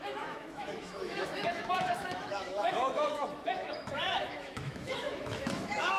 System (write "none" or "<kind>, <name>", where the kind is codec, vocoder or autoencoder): autoencoder, DAC-VAE